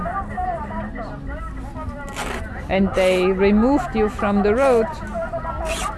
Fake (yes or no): no